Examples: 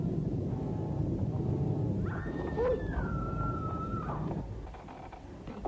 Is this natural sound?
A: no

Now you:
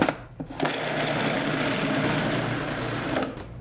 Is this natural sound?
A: yes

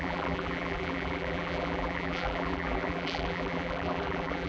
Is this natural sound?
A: no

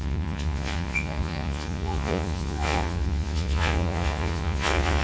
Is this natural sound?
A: no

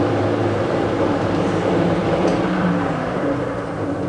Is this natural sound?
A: no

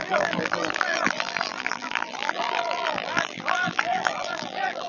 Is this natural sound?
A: no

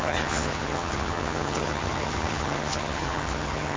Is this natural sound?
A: no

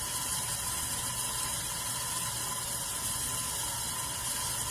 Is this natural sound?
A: yes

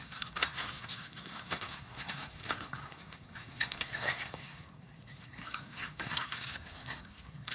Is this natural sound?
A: no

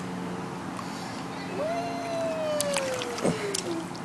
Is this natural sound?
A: yes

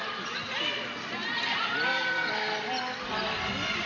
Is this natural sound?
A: yes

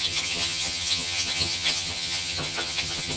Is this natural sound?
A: no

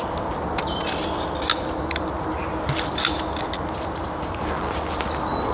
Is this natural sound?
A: yes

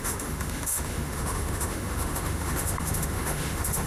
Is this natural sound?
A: no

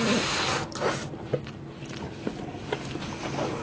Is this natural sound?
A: yes